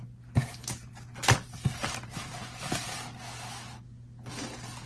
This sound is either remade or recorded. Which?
recorded